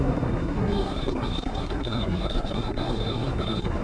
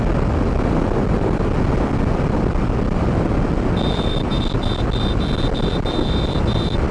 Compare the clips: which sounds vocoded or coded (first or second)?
first